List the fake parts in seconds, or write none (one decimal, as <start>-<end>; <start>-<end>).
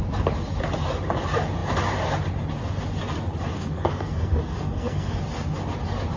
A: 3.5-5.2